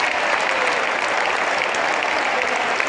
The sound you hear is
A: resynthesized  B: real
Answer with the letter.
B